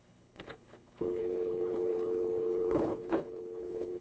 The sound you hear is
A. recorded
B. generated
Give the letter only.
B